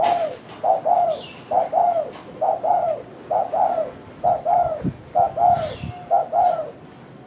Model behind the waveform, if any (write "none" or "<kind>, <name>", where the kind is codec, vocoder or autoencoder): none